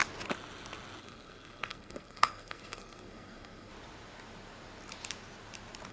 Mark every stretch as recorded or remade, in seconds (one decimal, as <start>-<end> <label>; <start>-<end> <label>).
0.0-1.0 recorded; 1.0-3.7 remade; 3.7-5.9 recorded